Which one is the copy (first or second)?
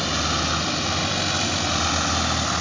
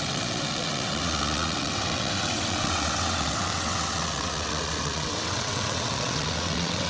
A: second